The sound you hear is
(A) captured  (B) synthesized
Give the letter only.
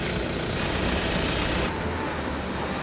A